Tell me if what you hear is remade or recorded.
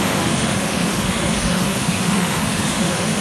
remade